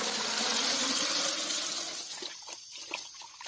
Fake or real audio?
real